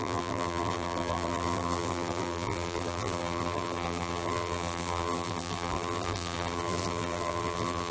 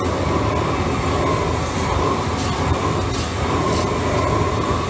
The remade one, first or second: first